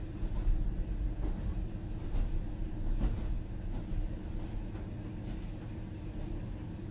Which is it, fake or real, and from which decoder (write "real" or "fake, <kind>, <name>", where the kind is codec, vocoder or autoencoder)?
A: real